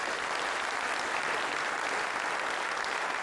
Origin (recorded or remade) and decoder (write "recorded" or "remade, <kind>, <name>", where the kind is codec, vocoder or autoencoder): recorded